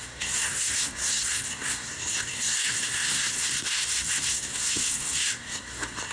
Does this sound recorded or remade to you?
remade